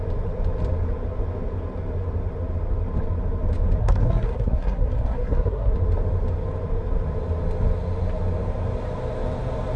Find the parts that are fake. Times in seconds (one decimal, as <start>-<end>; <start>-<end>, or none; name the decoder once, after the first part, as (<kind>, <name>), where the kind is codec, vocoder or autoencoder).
3.8-5.7 (codec, SNAC)